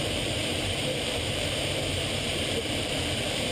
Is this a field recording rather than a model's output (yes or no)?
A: no